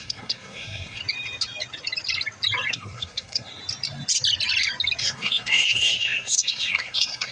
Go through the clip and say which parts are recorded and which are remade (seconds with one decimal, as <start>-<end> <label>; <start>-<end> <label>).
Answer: 0.0-1.0 remade; 1.0-2.7 recorded; 2.7-3.6 remade; 3.6-5.0 recorded; 5.0-7.3 remade